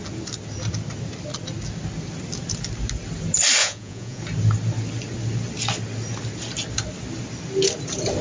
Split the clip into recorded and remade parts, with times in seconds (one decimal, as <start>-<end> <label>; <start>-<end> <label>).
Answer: 0.0-3.6 recorded; 3.6-4.2 remade; 4.2-8.2 recorded